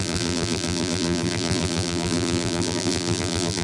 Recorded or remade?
remade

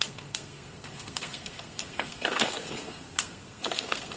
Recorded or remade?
remade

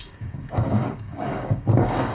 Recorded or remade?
remade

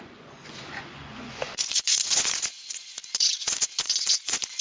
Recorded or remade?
remade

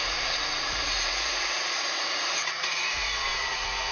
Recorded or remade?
remade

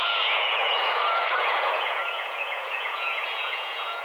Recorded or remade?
remade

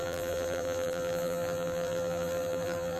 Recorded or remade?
remade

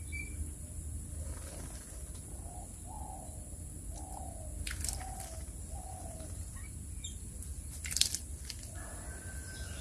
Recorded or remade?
remade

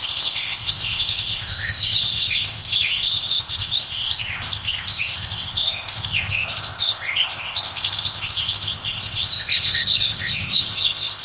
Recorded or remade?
remade